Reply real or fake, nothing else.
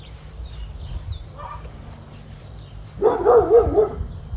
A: fake